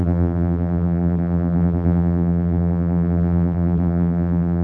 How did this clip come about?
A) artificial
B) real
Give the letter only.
A